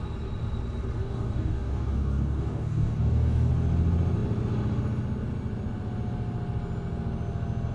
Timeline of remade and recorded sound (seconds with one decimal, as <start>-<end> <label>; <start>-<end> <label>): 0.0-1.0 recorded; 1.0-3.5 remade; 3.5-7.7 recorded